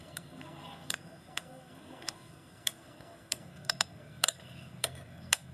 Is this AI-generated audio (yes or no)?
yes